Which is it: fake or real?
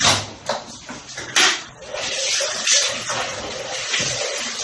real